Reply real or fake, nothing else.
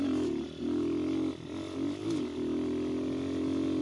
real